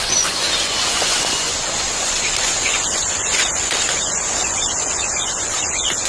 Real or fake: fake